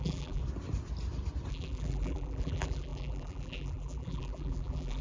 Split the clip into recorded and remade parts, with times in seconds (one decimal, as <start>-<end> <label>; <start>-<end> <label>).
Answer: 0.0-0.4 remade; 0.4-1.5 recorded; 1.5-5.0 remade